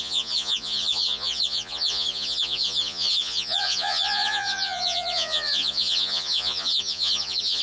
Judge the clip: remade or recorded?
remade